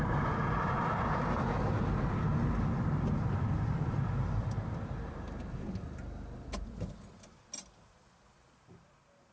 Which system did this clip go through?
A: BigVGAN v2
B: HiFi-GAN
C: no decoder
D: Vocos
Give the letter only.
C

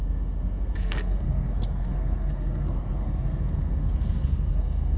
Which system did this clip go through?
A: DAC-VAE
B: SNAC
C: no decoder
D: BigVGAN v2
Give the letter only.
B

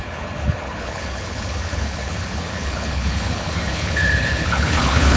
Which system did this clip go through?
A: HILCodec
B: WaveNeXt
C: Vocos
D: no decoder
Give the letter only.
A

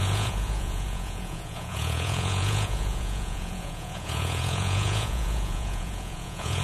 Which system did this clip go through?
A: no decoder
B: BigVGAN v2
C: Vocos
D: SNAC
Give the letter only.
C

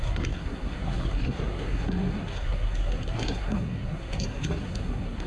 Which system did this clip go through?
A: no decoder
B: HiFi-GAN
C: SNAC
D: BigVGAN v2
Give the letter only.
C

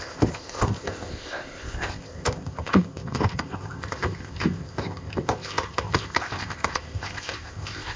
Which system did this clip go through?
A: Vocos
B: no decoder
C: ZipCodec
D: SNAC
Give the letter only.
C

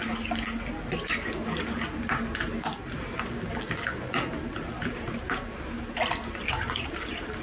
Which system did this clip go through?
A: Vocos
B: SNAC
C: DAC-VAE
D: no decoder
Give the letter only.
D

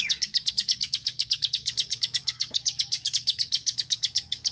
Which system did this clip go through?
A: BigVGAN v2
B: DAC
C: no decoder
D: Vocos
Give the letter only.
B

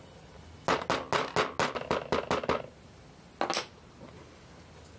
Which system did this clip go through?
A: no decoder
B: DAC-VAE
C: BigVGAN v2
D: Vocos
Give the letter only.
A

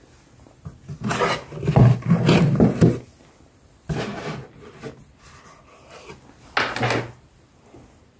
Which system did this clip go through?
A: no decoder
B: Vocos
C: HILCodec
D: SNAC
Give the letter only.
A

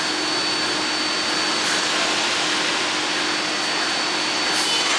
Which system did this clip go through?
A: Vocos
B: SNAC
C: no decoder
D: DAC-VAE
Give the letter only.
C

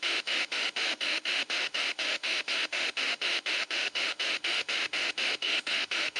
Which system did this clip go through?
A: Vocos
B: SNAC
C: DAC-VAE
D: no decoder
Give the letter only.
C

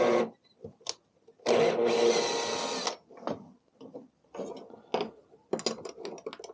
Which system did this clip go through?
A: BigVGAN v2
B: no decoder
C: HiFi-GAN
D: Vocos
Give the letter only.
B